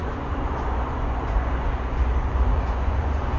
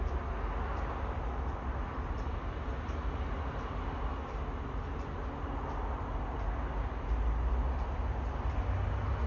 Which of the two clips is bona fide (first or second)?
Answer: second